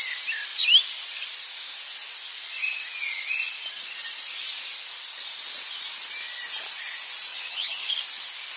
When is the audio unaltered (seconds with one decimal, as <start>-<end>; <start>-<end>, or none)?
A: 0.0-7.3; 7.9-8.6